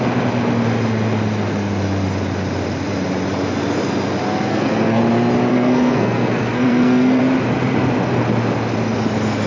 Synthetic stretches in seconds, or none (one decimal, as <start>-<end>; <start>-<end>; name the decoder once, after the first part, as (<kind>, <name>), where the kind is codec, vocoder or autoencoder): 4.5-5.0 (codec, SNAC); 5.5-7.2